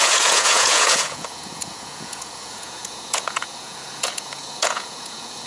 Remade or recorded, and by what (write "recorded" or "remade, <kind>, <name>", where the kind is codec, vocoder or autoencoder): remade, vocoder, Vocos